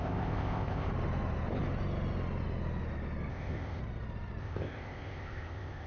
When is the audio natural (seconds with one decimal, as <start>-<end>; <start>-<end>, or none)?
0.9-3.3; 3.8-4.4